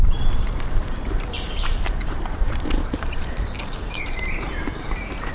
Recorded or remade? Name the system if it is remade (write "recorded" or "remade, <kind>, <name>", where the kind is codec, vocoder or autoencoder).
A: remade, vocoder, BigVGAN v2